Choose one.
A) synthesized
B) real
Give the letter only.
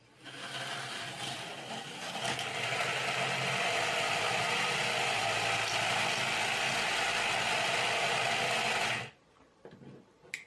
B